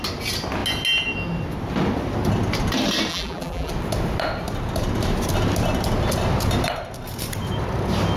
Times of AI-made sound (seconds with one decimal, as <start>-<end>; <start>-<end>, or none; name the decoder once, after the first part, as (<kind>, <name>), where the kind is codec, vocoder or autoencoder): 3.1-3.7 (vocoder, BigVGAN v2)